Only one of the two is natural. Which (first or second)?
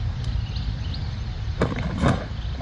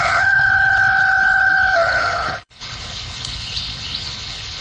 first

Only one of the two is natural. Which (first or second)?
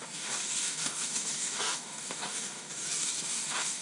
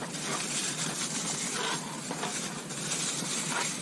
second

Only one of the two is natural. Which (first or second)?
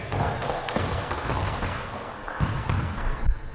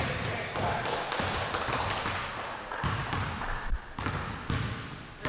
second